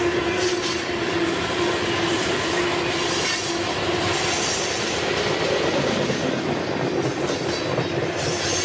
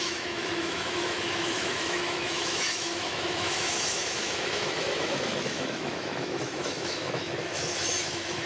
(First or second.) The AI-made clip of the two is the second